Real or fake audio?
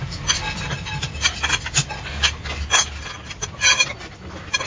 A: real